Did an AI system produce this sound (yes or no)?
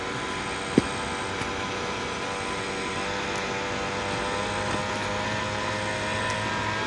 no